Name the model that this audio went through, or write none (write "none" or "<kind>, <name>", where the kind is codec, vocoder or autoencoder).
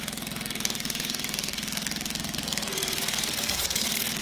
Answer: codec, SNAC